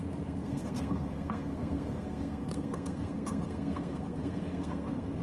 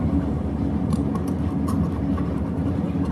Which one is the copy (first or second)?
first